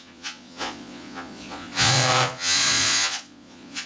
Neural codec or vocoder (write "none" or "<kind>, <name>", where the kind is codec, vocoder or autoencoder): vocoder, Vocos